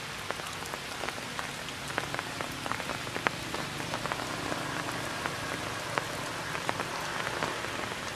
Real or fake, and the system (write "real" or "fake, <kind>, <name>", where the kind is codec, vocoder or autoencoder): real